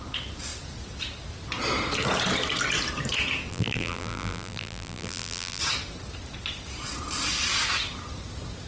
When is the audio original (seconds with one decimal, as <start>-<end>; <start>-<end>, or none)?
0.0-3.5; 5.6-8.7